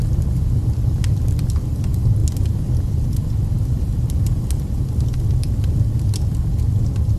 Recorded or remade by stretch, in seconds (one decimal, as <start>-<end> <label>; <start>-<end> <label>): 0.0-7.2 recorded